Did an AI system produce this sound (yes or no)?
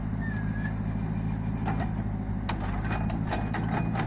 no